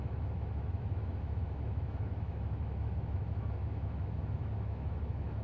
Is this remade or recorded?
remade